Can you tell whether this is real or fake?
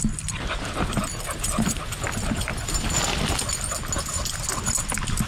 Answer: real